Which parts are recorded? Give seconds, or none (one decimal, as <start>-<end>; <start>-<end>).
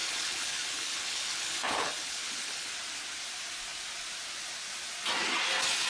2.7-5.9